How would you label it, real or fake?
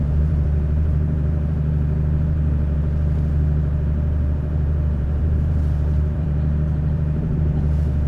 fake